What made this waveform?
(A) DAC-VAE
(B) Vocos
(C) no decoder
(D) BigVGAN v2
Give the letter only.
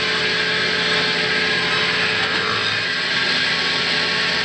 C